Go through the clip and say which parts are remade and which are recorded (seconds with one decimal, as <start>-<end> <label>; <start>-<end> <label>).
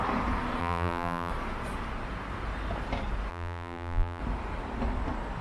0.0-0.6 recorded; 0.6-1.3 remade; 1.3-3.3 recorded; 3.3-4.2 remade; 4.2-5.4 recorded